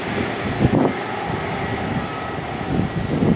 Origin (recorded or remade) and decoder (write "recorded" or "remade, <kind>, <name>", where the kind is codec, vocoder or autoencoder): recorded